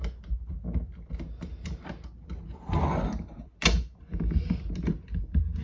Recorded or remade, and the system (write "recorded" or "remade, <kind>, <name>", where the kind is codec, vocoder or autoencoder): recorded